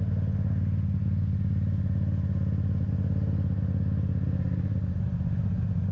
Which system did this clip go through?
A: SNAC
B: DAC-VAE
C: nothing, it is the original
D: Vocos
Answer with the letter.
C